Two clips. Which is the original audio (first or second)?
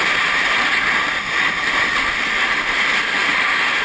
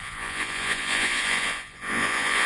first